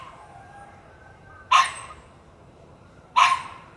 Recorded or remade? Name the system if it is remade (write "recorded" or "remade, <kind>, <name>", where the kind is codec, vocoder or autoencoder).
remade, vocoder, BigVGAN v2